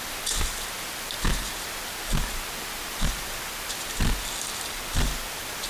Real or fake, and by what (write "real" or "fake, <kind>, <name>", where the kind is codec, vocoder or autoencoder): real